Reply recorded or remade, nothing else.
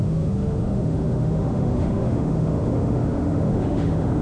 remade